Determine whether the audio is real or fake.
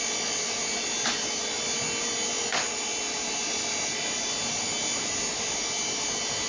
real